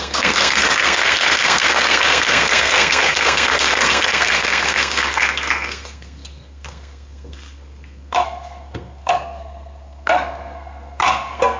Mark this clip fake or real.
fake